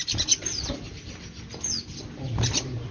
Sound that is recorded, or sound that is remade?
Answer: recorded